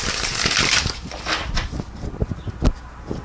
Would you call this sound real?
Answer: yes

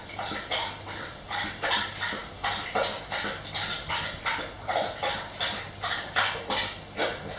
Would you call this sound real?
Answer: yes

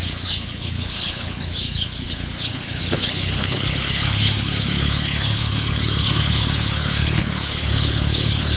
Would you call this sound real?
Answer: no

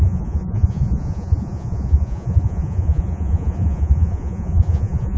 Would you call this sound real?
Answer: no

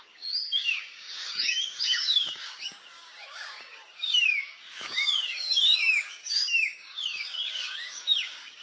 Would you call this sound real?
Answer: no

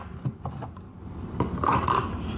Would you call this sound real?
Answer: yes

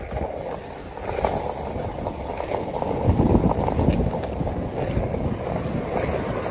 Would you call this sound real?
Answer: yes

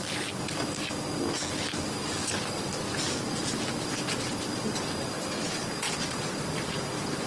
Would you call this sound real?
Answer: yes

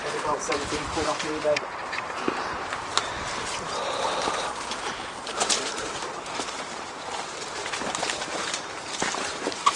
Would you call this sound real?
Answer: no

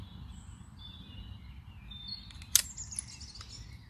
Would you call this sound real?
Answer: yes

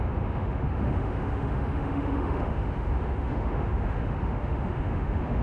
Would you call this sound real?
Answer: no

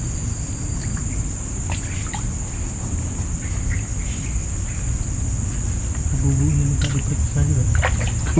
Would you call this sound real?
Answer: yes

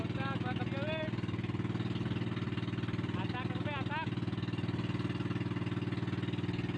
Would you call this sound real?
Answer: yes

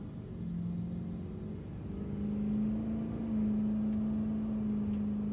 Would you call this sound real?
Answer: yes